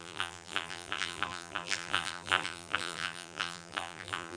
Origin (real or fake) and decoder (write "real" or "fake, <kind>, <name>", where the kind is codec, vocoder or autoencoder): fake, vocoder, BigVGAN v2